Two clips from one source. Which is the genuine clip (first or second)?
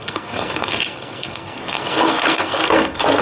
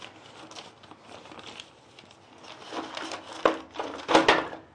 second